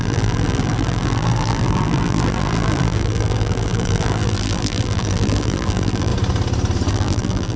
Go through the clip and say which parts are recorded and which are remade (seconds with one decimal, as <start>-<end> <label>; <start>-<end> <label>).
0.0-6.1 remade; 6.1-6.9 recorded; 6.9-7.6 remade